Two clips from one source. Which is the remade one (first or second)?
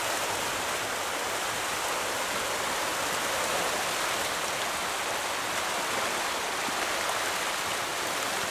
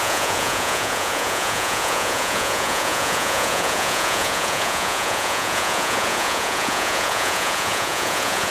second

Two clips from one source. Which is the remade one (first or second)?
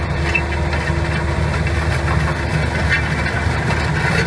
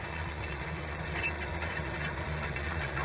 second